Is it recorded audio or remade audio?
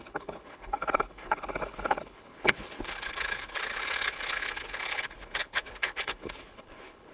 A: remade